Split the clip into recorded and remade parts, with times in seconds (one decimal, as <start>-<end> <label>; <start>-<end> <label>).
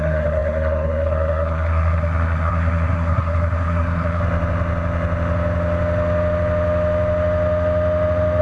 0.0-4.2 remade; 4.2-8.4 recorded